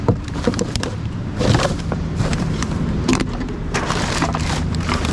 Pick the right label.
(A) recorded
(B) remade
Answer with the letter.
B